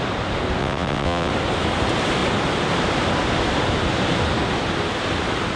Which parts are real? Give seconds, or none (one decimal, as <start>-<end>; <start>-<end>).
0.0-0.6; 1.3-5.6